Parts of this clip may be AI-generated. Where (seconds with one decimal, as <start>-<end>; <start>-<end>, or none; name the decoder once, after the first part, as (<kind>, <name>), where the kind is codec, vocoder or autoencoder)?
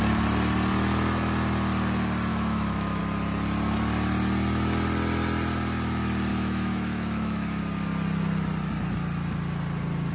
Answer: 2.3-3.0 (autoencoder, DAC-VAE); 6.3-7.6